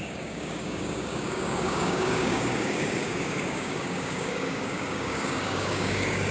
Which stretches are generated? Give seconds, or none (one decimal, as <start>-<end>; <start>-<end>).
0.0-6.3